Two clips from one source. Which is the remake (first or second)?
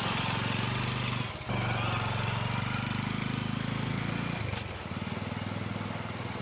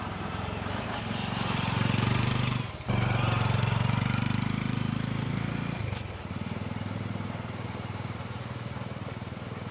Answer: second